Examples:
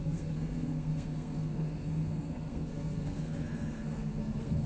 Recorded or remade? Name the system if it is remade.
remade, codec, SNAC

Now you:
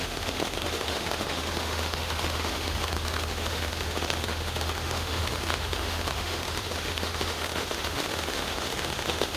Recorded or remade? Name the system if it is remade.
remade, autoencoder, DAC-VAE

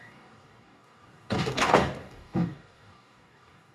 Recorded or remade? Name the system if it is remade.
remade, codec, DAC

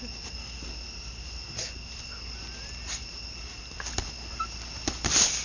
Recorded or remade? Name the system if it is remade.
recorded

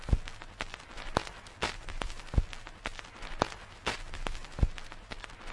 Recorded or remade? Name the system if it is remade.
recorded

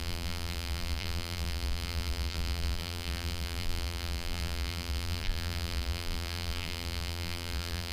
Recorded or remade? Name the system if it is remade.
remade, vocoder, BigVGAN v2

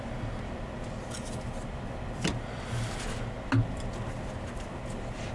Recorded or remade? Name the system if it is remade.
recorded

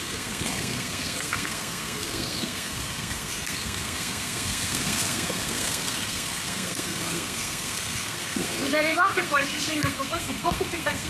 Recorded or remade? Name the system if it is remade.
remade, codec, SNAC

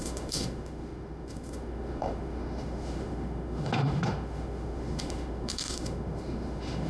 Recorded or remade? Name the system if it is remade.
remade, autoencoder, DAC-VAE